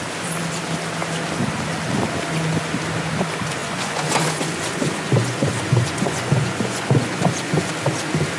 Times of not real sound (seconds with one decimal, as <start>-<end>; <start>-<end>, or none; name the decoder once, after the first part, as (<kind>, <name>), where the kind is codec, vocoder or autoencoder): 3.6-7.7 (vocoder, Vocos)